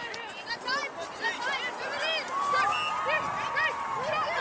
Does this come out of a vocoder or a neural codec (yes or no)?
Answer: no